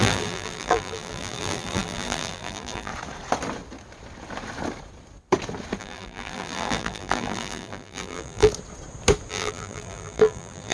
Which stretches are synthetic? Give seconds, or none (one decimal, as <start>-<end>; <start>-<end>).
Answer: 0.0-2.9; 5.8-8.5; 9.3-10.7

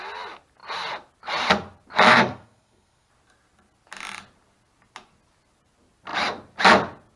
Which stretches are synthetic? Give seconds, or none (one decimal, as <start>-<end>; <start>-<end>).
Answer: 2.1-3.1

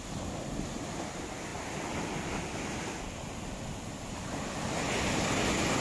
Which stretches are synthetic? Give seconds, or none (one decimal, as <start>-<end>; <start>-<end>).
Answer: none

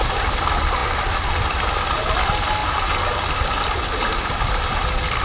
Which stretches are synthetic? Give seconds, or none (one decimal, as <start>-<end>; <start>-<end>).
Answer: none

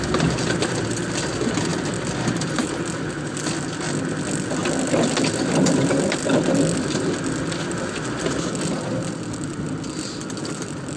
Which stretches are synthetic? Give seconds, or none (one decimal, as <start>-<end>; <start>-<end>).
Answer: 0.0-4.6; 5.6-9.5; 10.3-11.0

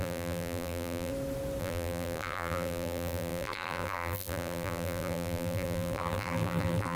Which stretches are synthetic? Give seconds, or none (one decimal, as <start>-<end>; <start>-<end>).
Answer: 0.0-1.1; 1.6-7.0

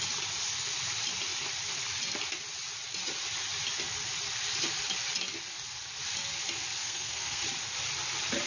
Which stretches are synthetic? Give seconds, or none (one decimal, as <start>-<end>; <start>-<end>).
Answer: 6.8-7.4

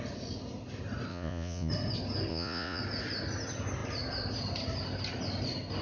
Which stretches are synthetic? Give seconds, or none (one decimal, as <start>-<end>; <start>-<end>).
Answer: 1.1-1.7; 2.3-2.8